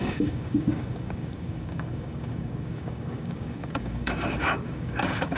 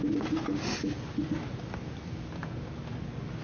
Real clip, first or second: second